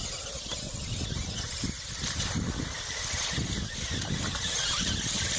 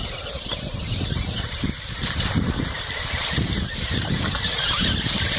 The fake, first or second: second